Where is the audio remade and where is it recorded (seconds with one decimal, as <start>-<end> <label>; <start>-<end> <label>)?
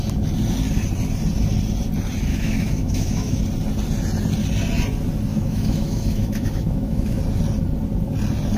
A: 0.0-2.3 recorded; 2.3-3.4 remade; 3.4-5.3 recorded; 5.3-7.2 remade; 7.2-8.6 recorded